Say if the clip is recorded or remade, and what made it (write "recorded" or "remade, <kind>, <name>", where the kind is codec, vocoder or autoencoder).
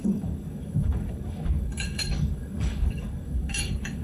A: remade, codec, DAC